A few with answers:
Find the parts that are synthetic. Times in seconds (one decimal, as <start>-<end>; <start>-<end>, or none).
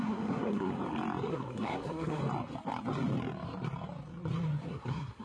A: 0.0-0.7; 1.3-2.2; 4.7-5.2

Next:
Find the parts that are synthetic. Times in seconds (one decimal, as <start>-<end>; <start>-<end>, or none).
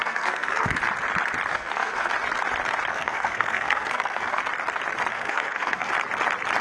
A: 0.0-0.8; 1.5-2.1; 2.9-4.4; 5.1-5.9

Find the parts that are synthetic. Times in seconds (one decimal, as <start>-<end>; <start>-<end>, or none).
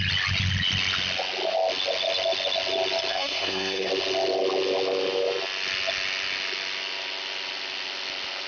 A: 3.1-3.9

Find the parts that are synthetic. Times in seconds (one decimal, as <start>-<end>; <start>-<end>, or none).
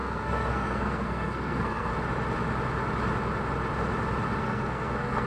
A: 0.0-1.9; 4.4-5.3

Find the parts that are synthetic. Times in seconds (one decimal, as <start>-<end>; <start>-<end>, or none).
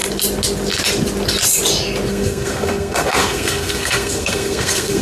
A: 2.1-5.0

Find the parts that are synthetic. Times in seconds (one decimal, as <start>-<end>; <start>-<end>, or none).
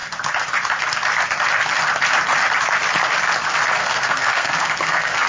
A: 3.8-5.3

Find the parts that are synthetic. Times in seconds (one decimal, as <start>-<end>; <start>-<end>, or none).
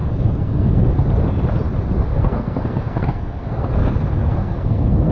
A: 0.0-1.0; 2.1-5.1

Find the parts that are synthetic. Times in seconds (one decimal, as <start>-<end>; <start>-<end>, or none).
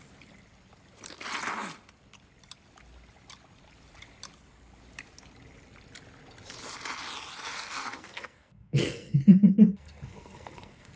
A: 7.4-11.0